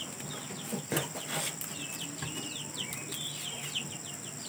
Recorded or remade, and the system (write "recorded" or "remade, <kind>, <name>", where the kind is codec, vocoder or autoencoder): recorded